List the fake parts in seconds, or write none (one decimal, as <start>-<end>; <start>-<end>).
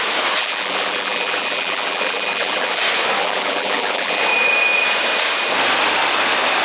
0.4-2.8; 3.2-4.2